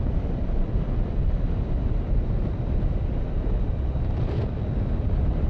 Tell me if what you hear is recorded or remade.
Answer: remade